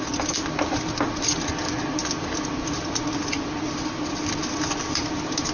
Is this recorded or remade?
recorded